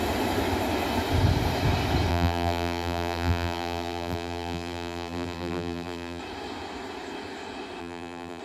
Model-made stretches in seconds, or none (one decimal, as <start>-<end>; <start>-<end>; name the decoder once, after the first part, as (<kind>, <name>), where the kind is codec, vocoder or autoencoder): 2.1-6.2 (vocoder, BigVGAN v2); 7.8-8.4